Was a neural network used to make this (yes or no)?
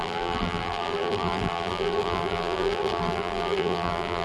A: yes